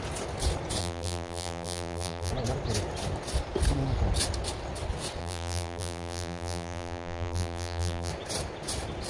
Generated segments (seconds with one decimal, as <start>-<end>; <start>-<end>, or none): 0.8-2.3; 5.2-8.1